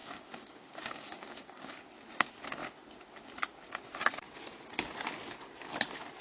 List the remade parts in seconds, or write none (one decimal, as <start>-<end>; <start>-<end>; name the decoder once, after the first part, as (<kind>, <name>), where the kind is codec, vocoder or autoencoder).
0.0-1.8 (codec, DAC)